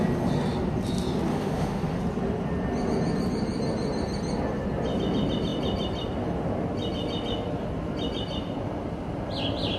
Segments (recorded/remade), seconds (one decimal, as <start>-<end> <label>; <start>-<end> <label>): 0.0-1.3 recorded; 1.3-2.0 remade; 2.0-9.8 recorded